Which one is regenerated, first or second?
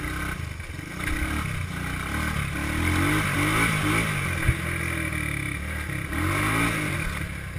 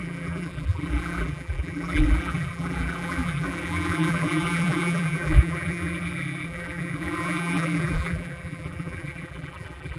second